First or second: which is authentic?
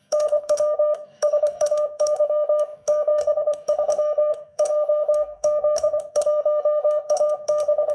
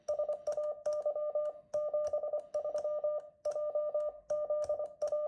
second